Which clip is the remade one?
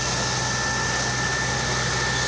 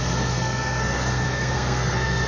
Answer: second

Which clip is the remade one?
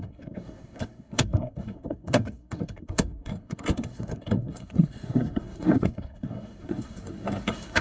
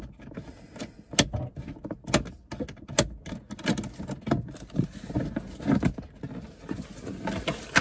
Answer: first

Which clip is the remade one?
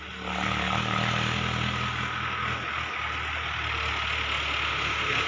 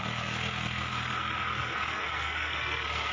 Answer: second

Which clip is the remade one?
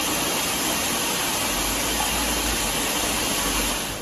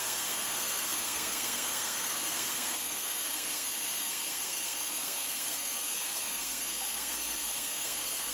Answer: second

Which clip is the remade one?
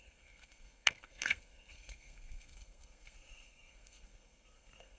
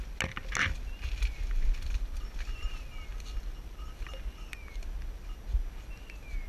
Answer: first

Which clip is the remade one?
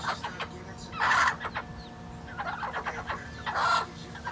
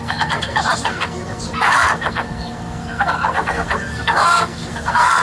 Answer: second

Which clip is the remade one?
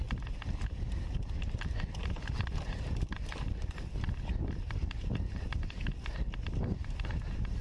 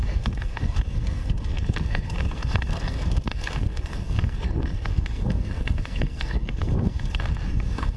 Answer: second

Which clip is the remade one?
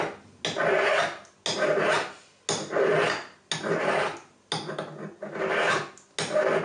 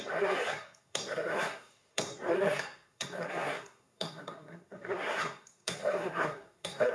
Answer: second